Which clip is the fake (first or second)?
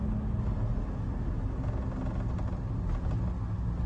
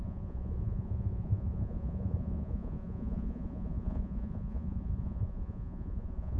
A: second